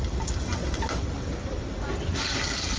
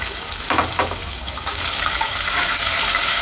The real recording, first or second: first